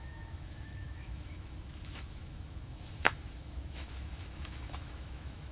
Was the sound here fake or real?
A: fake